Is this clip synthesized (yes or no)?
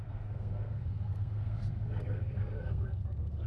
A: yes